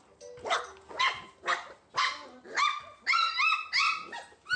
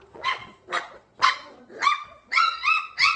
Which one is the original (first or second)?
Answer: first